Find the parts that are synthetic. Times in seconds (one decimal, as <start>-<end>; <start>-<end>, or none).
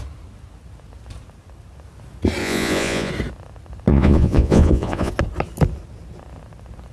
2.4-3.1; 3.9-5.1